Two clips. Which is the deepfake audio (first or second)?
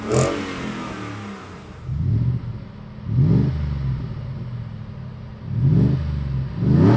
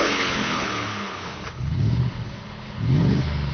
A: second